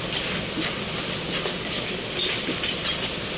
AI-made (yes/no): no